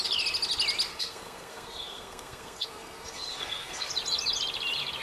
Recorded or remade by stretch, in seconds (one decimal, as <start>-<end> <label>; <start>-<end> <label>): 0.0-0.9 recorded; 0.9-3.9 remade; 3.9-5.0 recorded